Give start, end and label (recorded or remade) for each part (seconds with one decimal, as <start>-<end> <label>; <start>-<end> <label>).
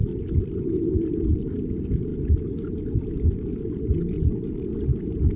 0.0-5.4 recorded